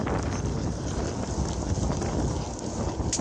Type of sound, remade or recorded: recorded